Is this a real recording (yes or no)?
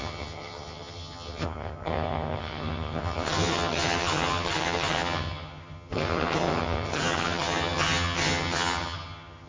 no